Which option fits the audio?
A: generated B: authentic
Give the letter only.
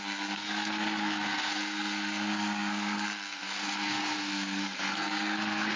A